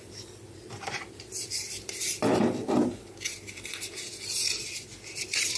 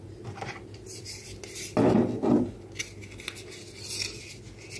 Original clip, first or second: second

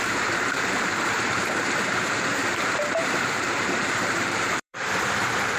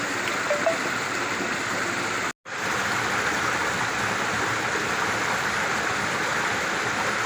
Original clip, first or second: second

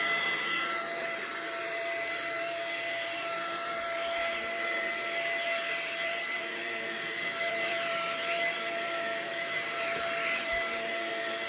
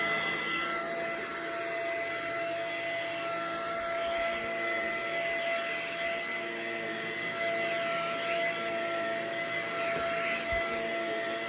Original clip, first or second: second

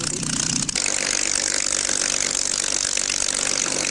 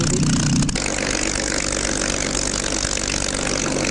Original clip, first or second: second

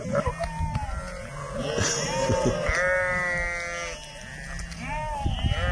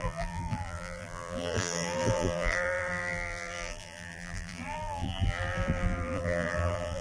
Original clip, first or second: first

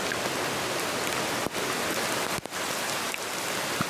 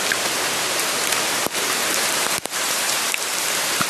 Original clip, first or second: first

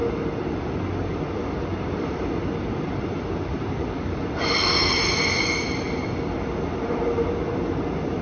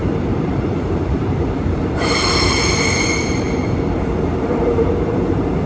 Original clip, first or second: first